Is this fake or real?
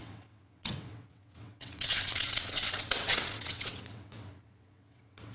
fake